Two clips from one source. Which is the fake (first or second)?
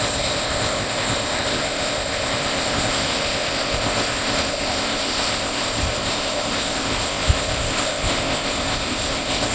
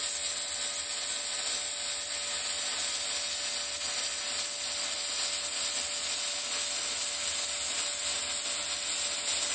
first